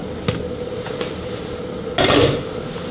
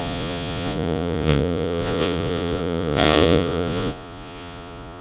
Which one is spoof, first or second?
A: second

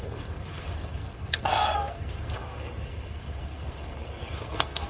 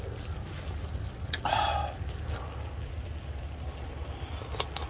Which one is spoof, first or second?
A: first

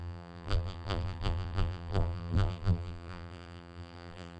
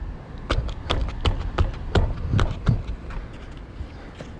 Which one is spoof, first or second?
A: first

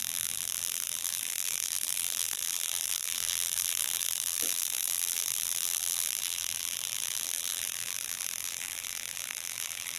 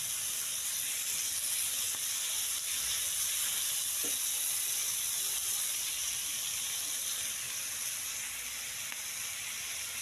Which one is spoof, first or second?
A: first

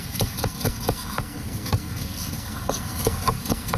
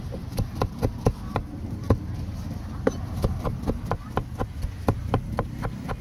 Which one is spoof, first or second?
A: first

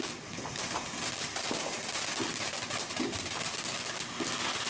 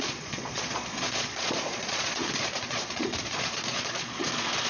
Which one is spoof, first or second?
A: second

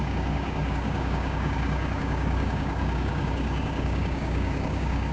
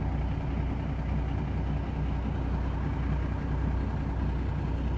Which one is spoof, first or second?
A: first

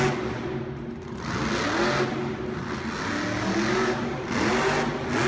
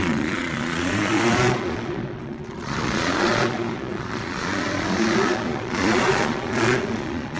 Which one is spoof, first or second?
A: second